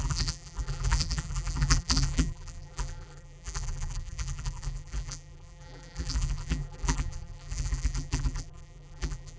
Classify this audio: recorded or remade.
remade